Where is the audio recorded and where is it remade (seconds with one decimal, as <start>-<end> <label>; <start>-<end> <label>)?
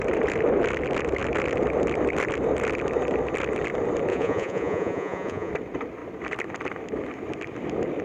0.0-4.1 recorded; 4.1-5.5 remade; 5.5-8.0 recorded